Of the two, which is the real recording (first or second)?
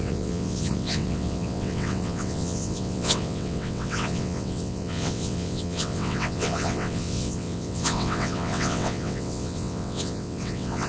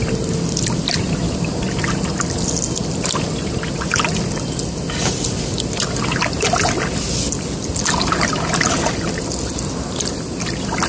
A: second